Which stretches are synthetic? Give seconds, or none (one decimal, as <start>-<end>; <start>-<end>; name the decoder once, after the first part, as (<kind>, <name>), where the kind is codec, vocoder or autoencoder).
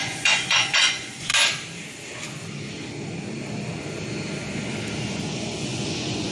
0.0-1.3 (vocoder, Vocos); 5.1-6.3